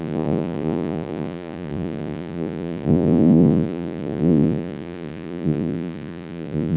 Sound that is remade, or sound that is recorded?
remade